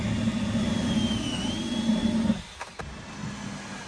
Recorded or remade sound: recorded